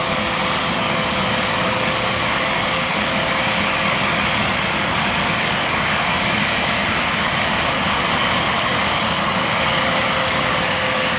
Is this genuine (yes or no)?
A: no